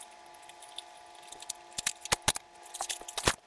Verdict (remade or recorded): recorded